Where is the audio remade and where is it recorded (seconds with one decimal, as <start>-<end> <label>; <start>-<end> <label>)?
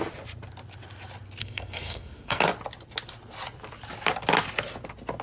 0.0-1.4 recorded; 1.4-2.4 remade; 2.4-5.2 recorded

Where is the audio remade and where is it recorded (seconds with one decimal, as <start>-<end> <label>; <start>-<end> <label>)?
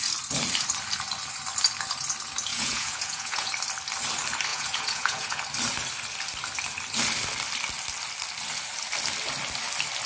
0.0-2.5 recorded; 2.5-3.5 remade; 3.5-4.5 recorded; 4.5-5.4 remade; 5.4-10.1 recorded